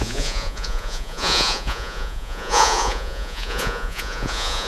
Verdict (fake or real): fake